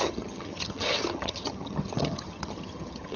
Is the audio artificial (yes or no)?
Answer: yes